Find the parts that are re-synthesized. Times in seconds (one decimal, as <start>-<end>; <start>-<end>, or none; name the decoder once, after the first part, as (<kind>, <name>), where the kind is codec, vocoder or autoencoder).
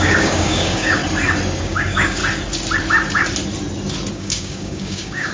0.0-1.0 (codec, DAC); 1.6-2.2; 4.1-5.3